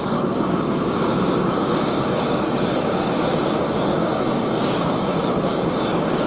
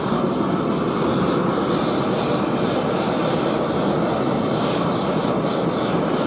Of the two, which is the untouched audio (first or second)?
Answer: second